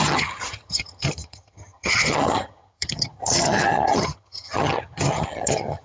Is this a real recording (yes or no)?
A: no